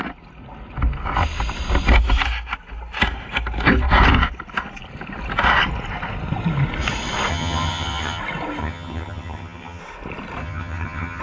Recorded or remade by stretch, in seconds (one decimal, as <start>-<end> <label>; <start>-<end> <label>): 0.0-7.3 recorded; 7.3-8.2 remade; 8.2-8.6 recorded; 8.6-9.8 remade; 9.8-10.4 recorded; 10.4-11.2 remade